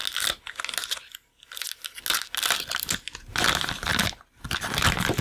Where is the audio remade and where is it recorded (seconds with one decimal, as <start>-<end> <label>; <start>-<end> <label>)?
0.0-5.2 recorded